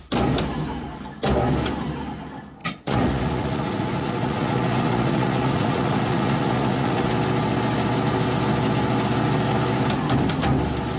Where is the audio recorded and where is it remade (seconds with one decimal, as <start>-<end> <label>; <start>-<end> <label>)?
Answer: 0.0-2.6 recorded; 2.6-7.1 remade; 7.1-11.0 recorded